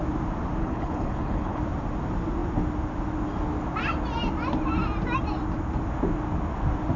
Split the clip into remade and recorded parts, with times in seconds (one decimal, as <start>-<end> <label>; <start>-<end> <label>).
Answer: 0.0-0.6 recorded; 0.6-1.6 remade; 1.6-7.0 recorded